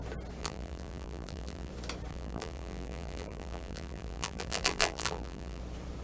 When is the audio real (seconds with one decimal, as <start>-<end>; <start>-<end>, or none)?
0.0-0.4; 1.7-2.1; 5.6-6.0